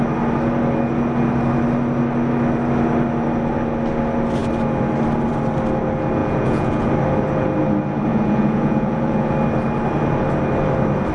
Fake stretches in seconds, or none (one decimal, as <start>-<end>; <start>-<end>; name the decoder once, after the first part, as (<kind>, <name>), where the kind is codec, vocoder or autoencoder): 6.2-6.9 (vocoder, Vocos); 8.1-9.3

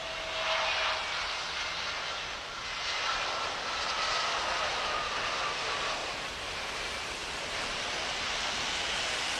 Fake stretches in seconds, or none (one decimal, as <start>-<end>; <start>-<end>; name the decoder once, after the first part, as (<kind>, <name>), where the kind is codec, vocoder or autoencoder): 6.0-6.7 (vocoder, BigVGAN v2); 7.2-7.8

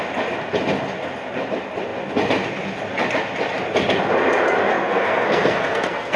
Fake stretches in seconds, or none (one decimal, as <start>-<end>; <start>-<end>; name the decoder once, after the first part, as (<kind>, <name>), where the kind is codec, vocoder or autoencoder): 4.7-6.2 (codec, SNAC)

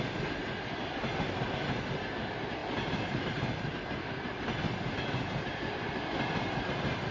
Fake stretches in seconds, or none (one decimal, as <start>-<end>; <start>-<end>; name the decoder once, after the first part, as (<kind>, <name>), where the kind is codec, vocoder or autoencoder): none

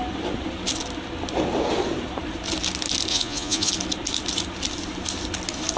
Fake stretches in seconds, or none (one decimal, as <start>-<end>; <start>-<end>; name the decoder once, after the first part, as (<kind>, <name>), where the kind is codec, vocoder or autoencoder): 3.1-3.7 (vocoder, Vocos)

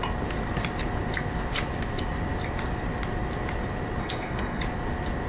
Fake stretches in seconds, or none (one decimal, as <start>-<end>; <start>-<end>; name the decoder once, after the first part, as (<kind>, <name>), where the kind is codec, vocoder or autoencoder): 4.0-4.6 (codec, SNAC)

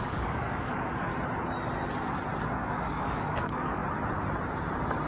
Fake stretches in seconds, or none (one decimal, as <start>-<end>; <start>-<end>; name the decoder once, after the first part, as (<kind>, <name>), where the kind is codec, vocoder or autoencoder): 0.0-1.1 (codec, DAC); 2.4-3.8

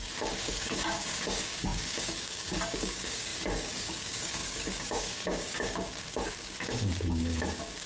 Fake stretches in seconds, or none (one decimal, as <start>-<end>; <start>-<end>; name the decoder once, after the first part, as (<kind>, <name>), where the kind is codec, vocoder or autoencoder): 0.0-7.9 (codec, DAC)